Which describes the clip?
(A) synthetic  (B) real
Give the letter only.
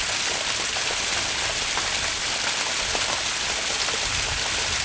B